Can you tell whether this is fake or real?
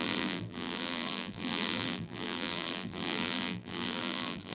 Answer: fake